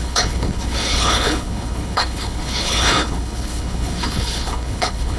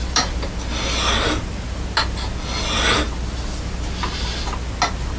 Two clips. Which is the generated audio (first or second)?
first